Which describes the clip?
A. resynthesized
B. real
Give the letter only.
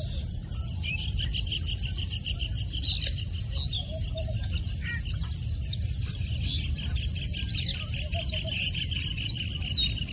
B